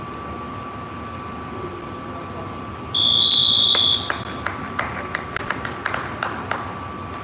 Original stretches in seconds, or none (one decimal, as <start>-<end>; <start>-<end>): 0.0-7.2